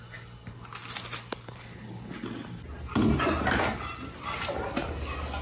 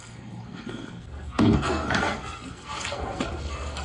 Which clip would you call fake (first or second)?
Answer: second